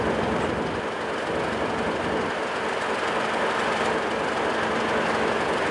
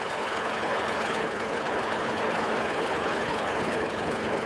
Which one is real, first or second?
first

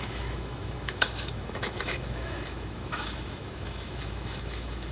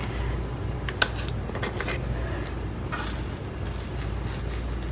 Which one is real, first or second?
second